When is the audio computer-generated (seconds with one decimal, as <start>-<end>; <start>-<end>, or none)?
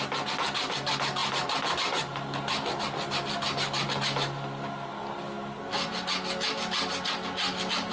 none